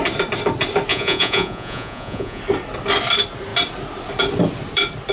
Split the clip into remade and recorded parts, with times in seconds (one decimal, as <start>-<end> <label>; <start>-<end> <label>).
0.0-0.9 recorded; 0.9-2.4 remade; 2.4-5.1 recorded